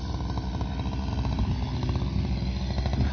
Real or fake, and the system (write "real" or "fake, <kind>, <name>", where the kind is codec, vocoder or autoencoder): real